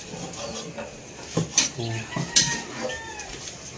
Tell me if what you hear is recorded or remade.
recorded